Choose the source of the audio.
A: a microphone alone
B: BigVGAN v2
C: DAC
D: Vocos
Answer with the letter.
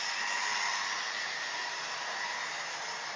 A